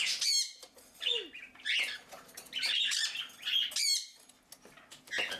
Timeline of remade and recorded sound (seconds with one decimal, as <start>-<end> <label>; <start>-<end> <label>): 0.0-5.4 recorded